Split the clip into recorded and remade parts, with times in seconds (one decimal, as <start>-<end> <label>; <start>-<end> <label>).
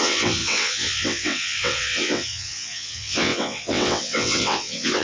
0.0-5.0 remade